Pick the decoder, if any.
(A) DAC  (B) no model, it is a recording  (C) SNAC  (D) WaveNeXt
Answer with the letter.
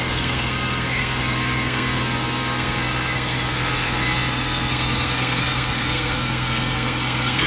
C